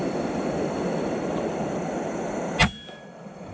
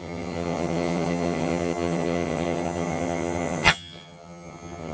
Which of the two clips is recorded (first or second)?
first